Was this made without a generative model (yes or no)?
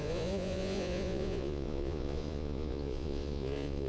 no